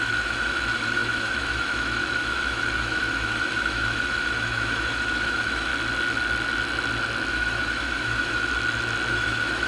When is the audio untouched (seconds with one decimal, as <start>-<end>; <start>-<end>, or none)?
5.7-7.3; 8.5-9.1